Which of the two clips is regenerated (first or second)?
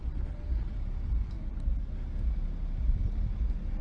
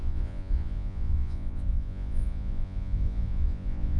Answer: second